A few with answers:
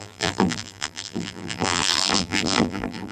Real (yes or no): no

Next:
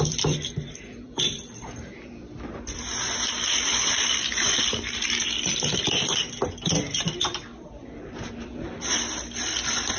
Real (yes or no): no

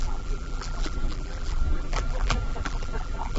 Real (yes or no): no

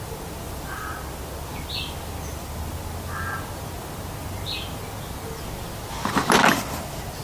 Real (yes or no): yes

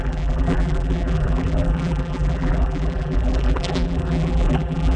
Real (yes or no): no